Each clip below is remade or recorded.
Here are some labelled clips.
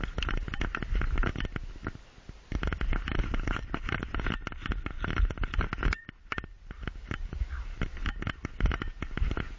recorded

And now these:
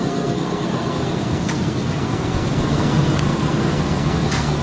remade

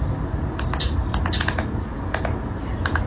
recorded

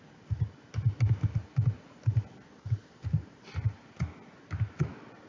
recorded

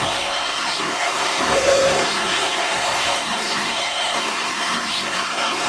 remade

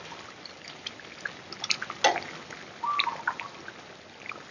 recorded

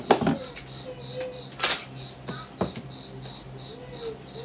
recorded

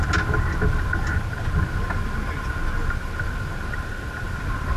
recorded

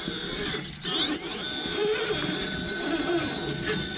recorded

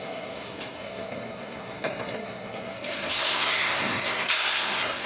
remade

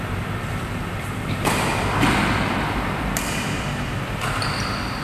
remade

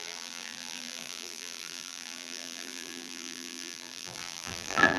remade